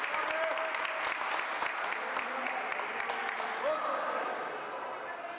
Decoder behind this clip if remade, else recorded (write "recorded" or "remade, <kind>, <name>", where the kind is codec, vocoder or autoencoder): recorded